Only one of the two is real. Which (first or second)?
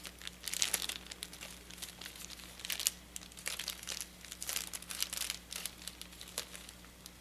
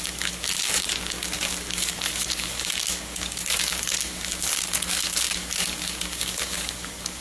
first